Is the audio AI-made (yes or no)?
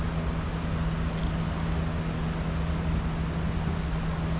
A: no